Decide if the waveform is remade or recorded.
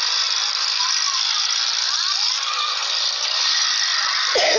recorded